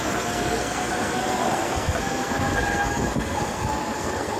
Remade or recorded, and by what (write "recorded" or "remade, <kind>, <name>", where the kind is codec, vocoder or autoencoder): remade, codec, SNAC